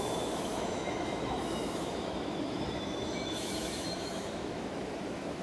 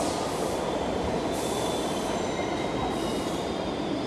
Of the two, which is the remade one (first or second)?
first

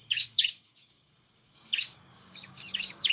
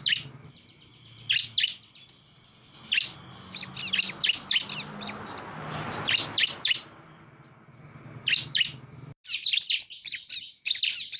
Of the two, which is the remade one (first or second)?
first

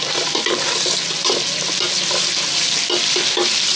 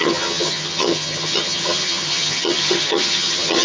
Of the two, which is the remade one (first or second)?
second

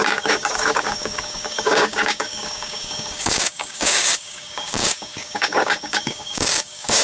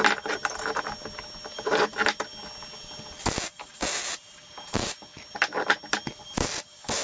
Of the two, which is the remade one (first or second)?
first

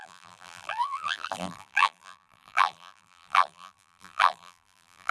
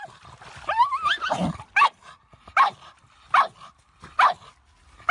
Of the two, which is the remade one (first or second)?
first